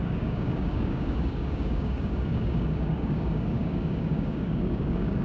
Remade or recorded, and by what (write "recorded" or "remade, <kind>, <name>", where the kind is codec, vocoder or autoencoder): remade, codec, DAC